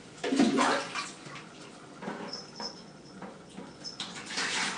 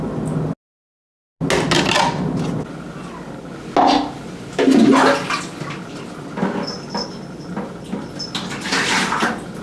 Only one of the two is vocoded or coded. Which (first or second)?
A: first